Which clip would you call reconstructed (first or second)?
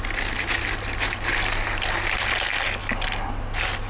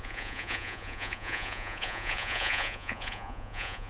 second